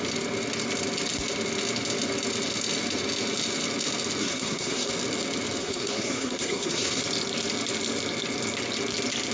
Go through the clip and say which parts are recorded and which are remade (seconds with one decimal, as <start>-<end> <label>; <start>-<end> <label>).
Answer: 0.0-4.2 recorded; 4.2-4.9 remade; 4.9-5.6 recorded; 5.6-7.0 remade; 7.0-9.3 recorded